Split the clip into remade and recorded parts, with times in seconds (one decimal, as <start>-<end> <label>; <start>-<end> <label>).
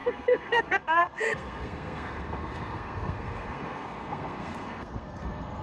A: 0.0-5.6 remade